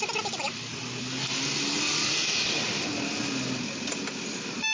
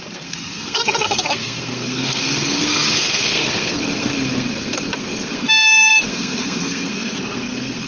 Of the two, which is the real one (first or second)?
first